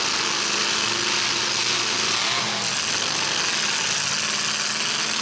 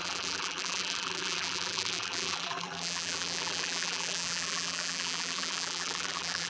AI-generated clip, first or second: second